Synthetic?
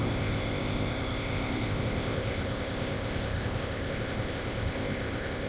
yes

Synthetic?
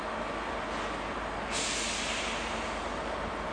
no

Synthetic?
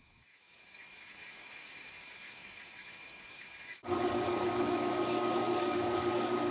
yes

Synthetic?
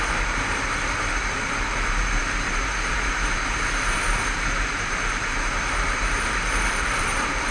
yes